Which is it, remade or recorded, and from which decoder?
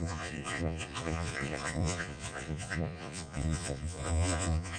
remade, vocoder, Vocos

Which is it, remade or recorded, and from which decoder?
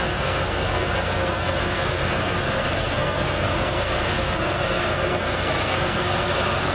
remade, codec, SNAC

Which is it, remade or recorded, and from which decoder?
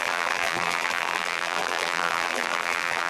remade, vocoder, BigVGAN v2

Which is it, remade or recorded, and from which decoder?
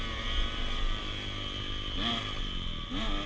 recorded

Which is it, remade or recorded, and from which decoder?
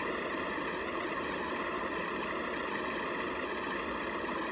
recorded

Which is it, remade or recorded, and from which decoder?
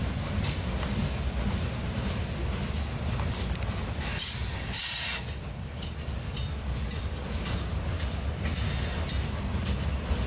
recorded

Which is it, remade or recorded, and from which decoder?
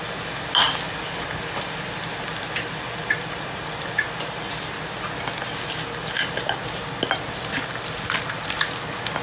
recorded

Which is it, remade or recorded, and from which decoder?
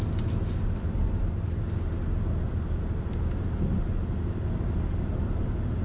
recorded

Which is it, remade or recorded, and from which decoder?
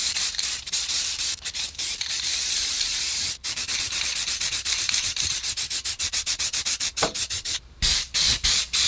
remade, vocoder, BigVGAN v2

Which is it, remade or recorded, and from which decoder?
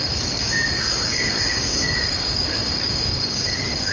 remade, codec, DAC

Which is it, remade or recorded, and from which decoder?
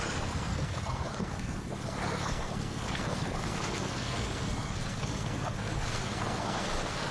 remade, codec, SNAC